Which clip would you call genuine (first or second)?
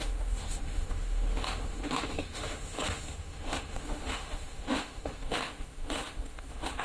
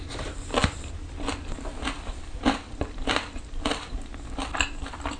second